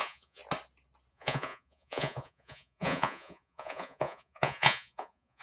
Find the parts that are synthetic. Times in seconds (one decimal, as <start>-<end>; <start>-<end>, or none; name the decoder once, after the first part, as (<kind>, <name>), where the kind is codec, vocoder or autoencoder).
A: 0.0-0.4 (vocoder, Vocos); 1.1-5.4